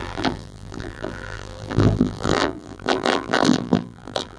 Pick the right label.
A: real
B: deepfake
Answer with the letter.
B